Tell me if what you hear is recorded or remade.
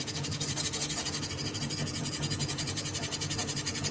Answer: remade